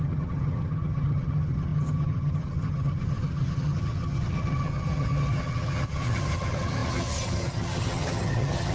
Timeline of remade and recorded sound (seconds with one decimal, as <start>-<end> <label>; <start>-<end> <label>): 0.0-8.7 remade